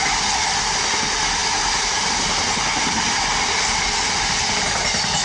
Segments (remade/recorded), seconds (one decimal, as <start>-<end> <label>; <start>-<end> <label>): 0.0-5.2 recorded